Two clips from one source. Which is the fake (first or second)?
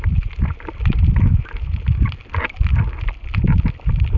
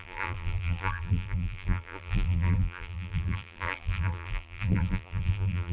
second